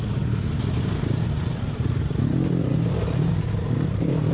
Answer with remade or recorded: recorded